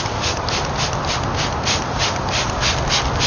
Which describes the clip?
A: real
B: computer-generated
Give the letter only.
A